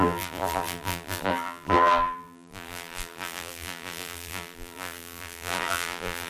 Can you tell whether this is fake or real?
fake